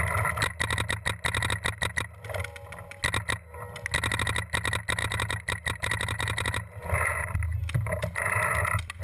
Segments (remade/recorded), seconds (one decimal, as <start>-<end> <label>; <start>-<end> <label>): 0.0-5.0 recorded; 5.0-9.0 remade